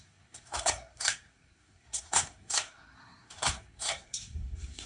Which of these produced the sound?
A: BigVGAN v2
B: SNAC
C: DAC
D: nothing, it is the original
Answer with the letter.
B